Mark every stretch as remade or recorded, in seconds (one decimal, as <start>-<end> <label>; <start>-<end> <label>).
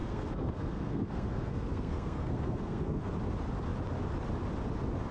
0.0-3.1 remade; 3.1-5.1 recorded